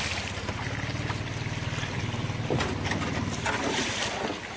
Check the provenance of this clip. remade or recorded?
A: recorded